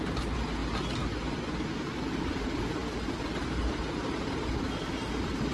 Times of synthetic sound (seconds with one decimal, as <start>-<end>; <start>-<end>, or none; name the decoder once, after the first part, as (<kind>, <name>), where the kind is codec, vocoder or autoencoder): 0.0-0.6 (vocoder, BigVGAN v2); 2.2-5.5